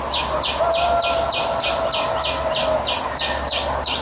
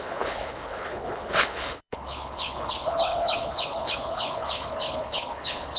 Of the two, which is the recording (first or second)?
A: first